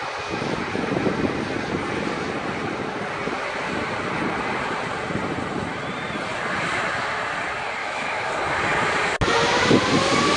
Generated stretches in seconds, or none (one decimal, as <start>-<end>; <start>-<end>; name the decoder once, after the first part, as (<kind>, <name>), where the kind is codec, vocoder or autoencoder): 7.8-8.3 (autoencoder, DAC-VAE)

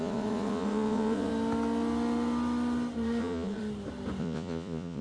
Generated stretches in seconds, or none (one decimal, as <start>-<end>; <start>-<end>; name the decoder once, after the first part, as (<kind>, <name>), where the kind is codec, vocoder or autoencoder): 0.0-1.3 (vocoder, Vocos); 3.2-3.6; 4.2-5.0